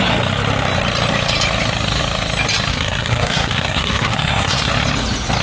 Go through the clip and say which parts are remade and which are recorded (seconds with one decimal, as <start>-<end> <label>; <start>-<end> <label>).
0.0-2.7 recorded; 2.7-4.7 remade; 4.7-5.4 recorded